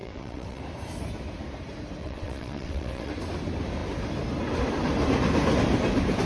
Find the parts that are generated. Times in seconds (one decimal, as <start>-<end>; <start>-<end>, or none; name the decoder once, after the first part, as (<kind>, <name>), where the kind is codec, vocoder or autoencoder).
0.0-0.6 (vocoder, WaveNeXt); 2.0-3.1